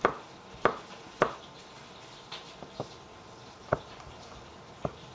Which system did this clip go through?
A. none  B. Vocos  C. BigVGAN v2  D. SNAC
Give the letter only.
A